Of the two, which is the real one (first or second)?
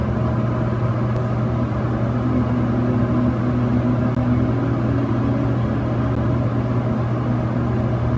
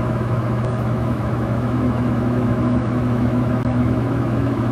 first